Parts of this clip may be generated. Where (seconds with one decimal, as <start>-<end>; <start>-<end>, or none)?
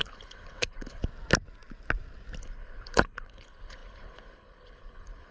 0.0-1.0; 2.4-5.3